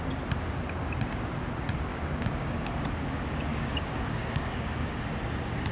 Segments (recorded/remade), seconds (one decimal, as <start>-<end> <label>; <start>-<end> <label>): 0.0-1.9 recorded; 1.9-2.7 remade; 2.7-3.5 recorded; 3.5-4.9 remade; 4.9-5.7 recorded